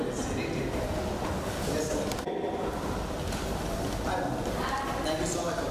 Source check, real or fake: real